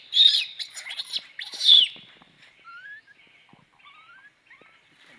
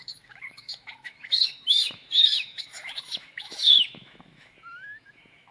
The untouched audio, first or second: first